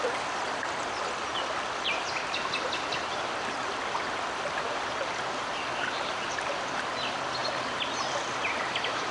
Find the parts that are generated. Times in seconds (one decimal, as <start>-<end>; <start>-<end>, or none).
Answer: none